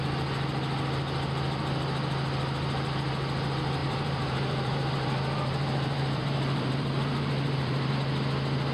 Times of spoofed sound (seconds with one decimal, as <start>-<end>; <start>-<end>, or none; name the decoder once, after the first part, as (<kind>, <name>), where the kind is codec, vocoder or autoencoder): 3.8-7.9 (vocoder, BigVGAN v2)